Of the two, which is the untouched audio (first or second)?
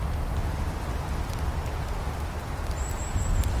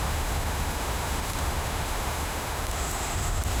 first